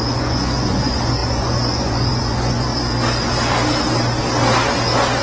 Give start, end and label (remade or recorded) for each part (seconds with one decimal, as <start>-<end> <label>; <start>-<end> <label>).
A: 0.0-2.7 remade; 2.7-5.2 recorded